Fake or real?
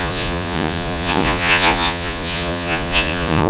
fake